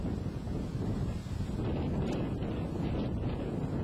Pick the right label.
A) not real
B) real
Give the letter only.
B